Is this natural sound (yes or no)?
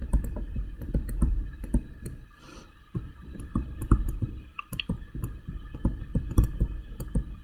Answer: no